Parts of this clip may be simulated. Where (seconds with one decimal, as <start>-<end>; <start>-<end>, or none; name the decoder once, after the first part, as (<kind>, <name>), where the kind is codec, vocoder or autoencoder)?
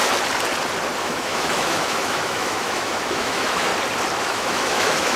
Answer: 1.0-3.7 (autoencoder, DAC-VAE); 4.2-5.2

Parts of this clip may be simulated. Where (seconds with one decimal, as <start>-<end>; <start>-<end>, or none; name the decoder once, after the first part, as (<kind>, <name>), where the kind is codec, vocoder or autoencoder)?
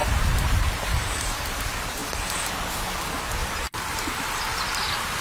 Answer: 0.0-1.6 (vocoder, BigVGAN v2); 3.4-4.2